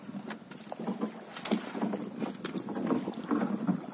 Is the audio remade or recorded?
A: recorded